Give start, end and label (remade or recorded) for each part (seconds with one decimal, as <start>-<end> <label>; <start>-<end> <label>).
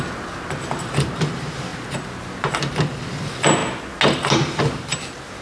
0.0-5.4 recorded